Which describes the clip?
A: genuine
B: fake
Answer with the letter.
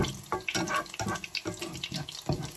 A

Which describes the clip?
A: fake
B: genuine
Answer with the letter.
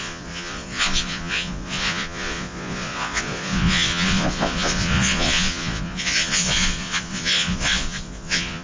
A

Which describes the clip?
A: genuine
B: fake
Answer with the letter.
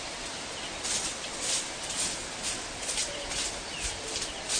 A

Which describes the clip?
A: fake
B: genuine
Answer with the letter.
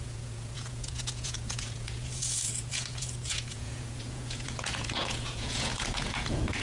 A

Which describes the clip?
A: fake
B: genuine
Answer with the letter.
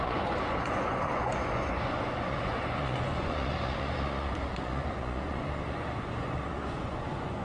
A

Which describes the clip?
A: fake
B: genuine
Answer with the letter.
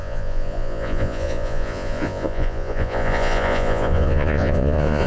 A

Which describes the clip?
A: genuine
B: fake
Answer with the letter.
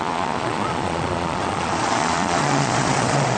B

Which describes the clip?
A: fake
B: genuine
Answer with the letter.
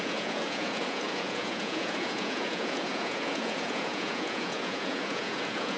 A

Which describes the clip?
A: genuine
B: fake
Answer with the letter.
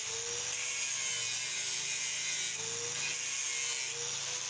A